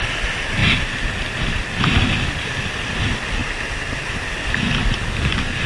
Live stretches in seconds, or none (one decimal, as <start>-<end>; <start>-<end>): 0.0-5.7